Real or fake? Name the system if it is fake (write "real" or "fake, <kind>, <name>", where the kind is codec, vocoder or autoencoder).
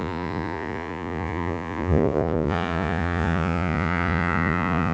fake, vocoder, Vocos